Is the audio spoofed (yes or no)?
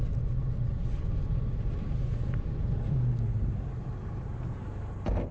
no